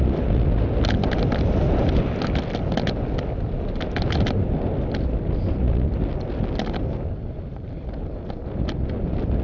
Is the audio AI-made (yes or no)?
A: no